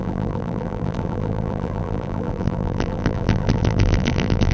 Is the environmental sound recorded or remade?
remade